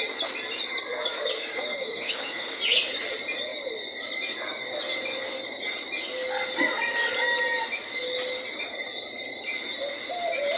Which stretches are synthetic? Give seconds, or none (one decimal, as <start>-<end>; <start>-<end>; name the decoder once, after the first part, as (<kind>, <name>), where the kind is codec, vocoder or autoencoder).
1.1-2.6 (codec, DAC)